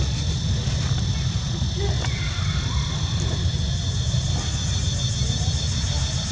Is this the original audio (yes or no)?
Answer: yes